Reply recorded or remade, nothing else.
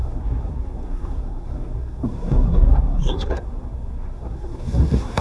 remade